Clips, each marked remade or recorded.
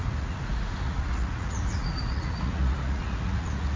remade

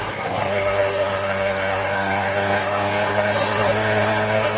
remade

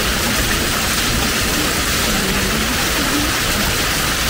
recorded